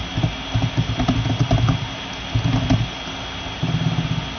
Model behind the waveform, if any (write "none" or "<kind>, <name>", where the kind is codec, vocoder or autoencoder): none